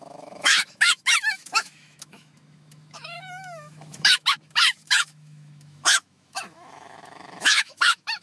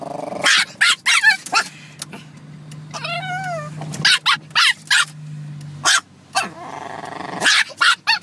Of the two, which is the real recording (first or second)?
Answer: second